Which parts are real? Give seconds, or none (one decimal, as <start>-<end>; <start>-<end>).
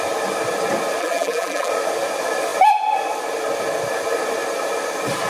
0.0-1.0; 1.7-5.3